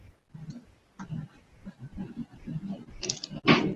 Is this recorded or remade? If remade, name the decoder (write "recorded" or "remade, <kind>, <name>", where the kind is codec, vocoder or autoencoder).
recorded